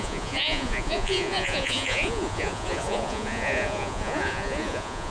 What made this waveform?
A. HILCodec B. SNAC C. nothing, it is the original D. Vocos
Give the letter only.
D